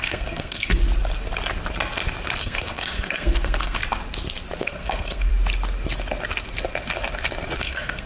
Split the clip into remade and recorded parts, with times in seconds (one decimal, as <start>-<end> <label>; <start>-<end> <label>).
0.0-0.8 remade; 0.8-2.4 recorded; 2.4-3.8 remade; 3.8-4.6 recorded; 4.6-5.3 remade; 5.3-7.6 recorded; 7.6-8.1 remade